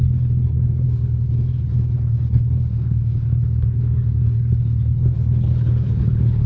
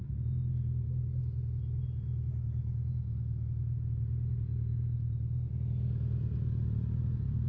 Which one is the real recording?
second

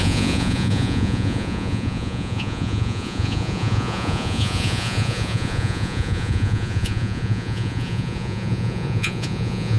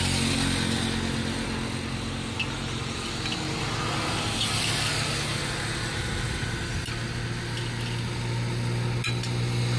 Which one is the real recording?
second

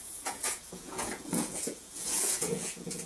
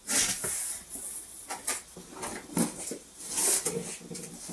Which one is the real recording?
second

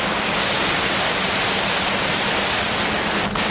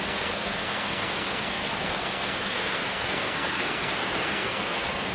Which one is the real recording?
first